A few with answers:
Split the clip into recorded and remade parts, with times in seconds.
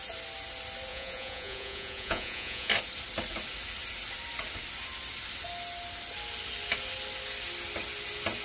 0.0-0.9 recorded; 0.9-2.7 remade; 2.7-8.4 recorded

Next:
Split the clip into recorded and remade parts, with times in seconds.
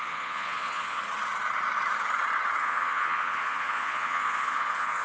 0.0-1.0 remade; 1.0-2.6 recorded; 2.6-5.0 remade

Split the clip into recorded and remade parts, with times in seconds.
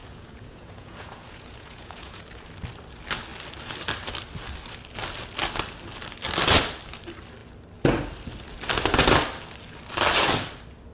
0.0-2.2 remade; 2.2-10.9 recorded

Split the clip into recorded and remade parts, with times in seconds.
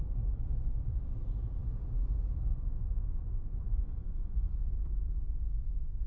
0.0-2.5 recorded; 2.5-4.5 remade; 4.5-6.1 recorded